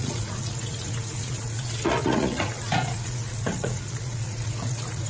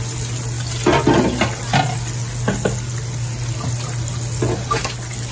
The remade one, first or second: first